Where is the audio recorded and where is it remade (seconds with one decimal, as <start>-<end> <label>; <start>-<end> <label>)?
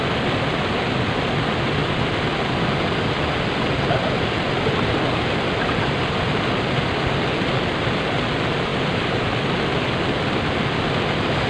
0.0-11.5 recorded